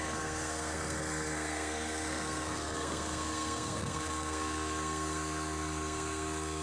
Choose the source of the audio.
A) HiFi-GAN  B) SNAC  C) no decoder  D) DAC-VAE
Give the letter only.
B